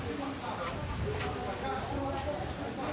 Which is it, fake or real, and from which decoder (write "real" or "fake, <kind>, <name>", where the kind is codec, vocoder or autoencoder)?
real